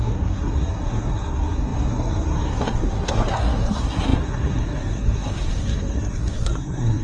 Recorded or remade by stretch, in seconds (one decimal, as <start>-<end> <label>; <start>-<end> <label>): 0.0-7.0 remade